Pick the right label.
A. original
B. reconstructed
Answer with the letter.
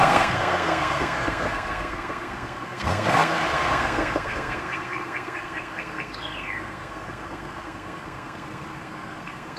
B